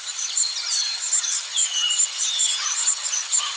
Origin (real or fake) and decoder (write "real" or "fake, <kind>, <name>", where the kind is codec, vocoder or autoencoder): fake, vocoder, HiFi-GAN